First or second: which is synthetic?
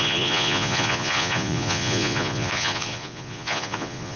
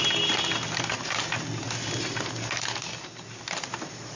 first